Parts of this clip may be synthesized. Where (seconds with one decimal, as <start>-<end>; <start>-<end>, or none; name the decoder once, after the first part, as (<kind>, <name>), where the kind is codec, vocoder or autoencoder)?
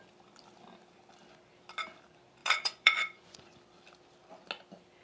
2.4-3.6 (vocoder, Vocos)